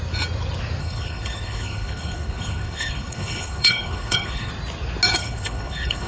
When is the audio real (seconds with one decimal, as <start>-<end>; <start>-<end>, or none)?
0.0-0.8; 4.5-5.2